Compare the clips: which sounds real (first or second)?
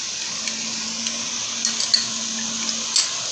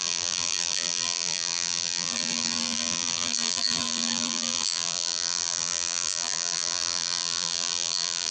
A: first